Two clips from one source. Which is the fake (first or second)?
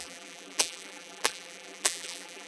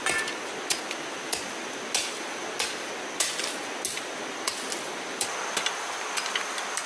first